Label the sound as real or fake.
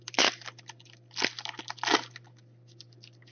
real